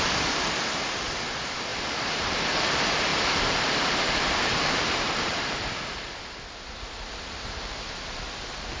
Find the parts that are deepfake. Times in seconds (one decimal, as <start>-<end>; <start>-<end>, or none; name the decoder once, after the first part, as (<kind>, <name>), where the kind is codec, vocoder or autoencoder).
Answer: 1.7-2.4 (vocoder, BigVGAN v2); 3.1-5.7